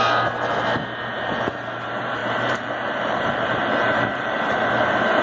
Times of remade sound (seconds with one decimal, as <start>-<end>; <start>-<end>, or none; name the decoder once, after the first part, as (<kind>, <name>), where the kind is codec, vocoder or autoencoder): 2.2-4.7 (vocoder, BigVGAN v2)